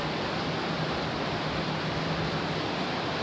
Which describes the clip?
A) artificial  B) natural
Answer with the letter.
B